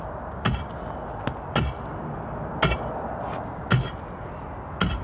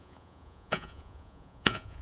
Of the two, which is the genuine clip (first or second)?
first